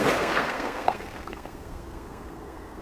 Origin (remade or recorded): remade